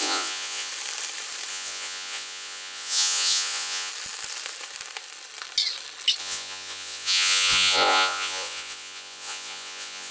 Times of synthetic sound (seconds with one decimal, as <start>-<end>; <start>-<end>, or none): 0.0-0.7; 1.5-3.9; 6.2-10.1